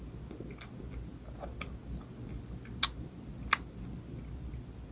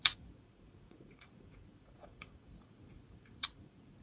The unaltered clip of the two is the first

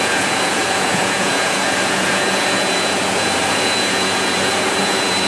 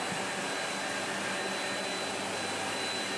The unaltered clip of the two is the second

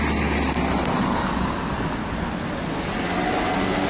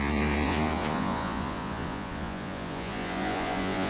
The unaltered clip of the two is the first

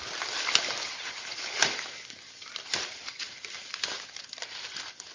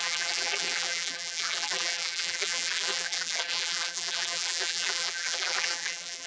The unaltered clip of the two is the first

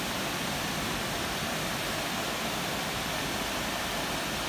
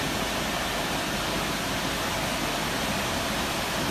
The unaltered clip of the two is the second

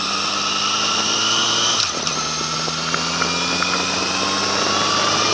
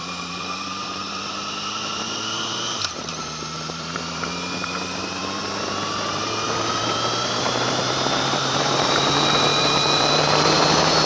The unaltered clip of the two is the first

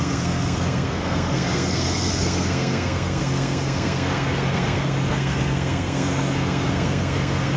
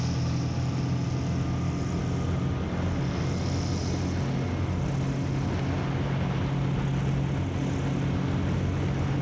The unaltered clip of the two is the second